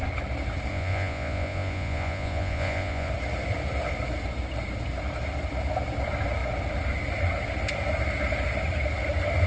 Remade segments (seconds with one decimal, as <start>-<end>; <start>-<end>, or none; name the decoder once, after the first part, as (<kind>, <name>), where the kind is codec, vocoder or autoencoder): 0.7-3.1 (vocoder, Vocos)